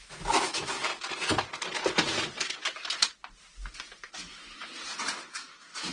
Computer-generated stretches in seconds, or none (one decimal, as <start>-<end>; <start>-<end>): 0.0-0.9; 4.1-4.7; 5.3-5.9